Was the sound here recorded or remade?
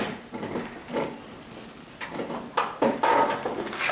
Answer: recorded